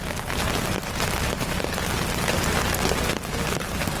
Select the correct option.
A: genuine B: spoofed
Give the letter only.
A